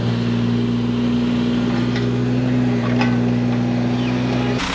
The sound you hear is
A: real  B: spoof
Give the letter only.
A